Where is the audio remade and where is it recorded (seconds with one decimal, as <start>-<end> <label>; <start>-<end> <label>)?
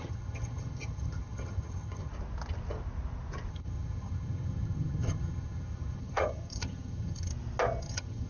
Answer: 0.0-2.1 remade; 2.1-3.5 recorded; 3.5-7.3 remade; 7.3-7.8 recorded; 7.8-8.3 remade